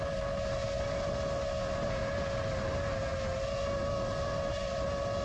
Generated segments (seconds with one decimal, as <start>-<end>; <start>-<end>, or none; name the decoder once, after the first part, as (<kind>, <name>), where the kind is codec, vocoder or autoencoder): none